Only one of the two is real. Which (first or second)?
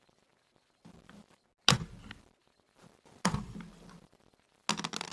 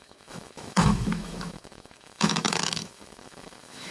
first